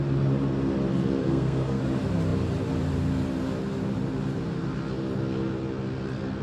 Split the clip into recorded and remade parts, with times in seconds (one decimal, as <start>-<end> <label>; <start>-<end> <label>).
0.0-1.2 recorded; 1.2-1.8 remade; 1.8-6.4 recorded